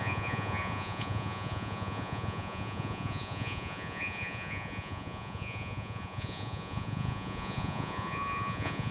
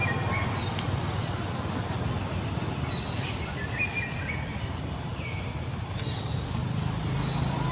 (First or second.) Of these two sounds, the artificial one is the first